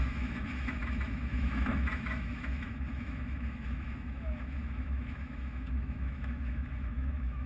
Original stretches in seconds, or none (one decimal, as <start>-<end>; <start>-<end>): none